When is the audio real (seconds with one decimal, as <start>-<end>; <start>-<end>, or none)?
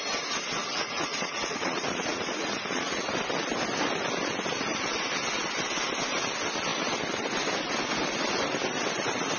0.0-0.6; 3.1-9.4